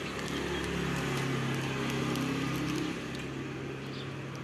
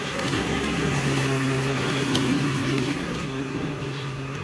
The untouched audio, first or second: first